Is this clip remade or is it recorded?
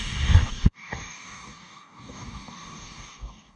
remade